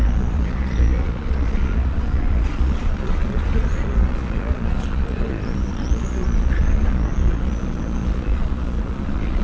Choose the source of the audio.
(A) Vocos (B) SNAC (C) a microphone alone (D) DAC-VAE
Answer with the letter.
A